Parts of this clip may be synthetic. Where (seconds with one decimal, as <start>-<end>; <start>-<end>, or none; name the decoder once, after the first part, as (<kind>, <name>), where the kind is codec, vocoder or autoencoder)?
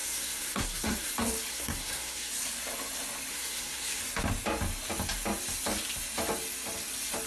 0.0-1.1 (codec, SNAC); 1.5-2.3; 3.3-4.0